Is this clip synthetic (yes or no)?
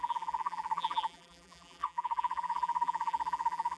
yes